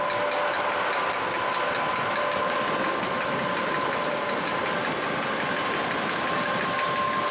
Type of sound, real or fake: real